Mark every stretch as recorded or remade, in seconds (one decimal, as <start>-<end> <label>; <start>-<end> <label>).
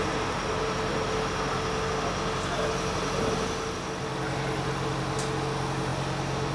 0.0-6.5 recorded